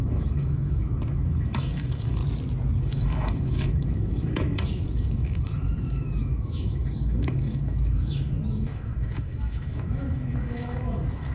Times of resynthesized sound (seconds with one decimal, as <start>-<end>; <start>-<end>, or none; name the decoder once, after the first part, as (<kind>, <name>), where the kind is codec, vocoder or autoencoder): 0.0-2.2 (autoencoder, DAC-VAE); 2.8-11.3